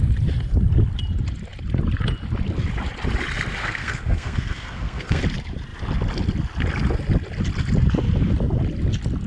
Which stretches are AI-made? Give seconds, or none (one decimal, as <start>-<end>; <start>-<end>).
3.6-5.2